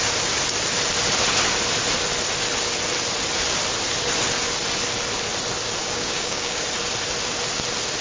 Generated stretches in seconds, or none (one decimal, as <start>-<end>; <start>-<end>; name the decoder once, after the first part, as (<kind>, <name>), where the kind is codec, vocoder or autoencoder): 5.8-6.6 (codec, DAC)